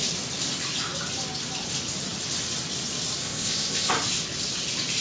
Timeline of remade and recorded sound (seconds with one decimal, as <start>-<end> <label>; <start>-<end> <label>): 0.0-3.2 recorded; 3.2-3.9 remade; 3.9-5.0 recorded